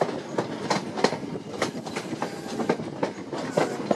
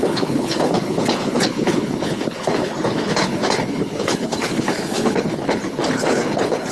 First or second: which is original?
first